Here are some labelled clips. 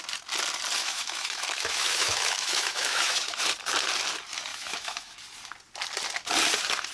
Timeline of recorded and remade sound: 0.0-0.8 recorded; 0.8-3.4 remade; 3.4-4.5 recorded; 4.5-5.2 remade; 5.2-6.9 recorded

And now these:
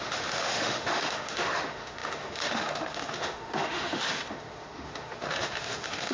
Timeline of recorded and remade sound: 0.0-6.1 remade

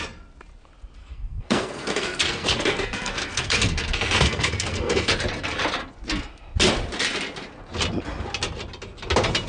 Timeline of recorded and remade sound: 0.0-1.0 recorded; 1.0-5.1 remade; 5.1-9.5 recorded